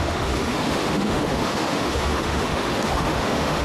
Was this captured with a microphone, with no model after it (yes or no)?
no